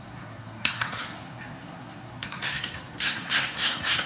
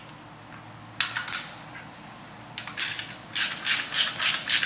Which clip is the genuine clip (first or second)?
second